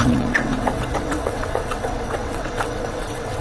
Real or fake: fake